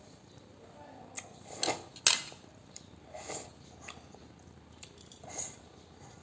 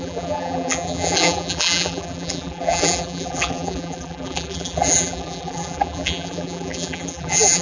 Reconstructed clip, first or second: second